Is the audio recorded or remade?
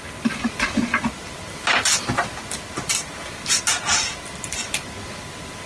recorded